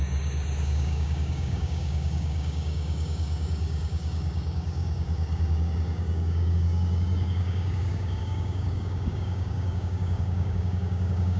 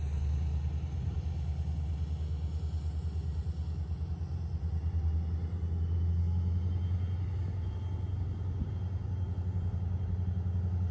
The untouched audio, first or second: second